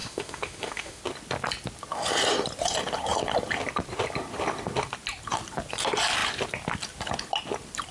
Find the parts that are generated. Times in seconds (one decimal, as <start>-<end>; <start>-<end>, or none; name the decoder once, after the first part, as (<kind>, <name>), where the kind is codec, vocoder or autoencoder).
0.0-1.0 (autoencoder, DAC-VAE)